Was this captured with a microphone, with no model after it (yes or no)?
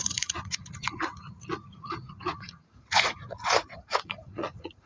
no